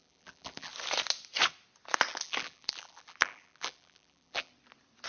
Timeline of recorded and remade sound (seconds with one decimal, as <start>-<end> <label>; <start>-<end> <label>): 0.0-0.7 remade; 0.7-2.1 recorded; 2.1-4.5 remade; 4.5-5.1 recorded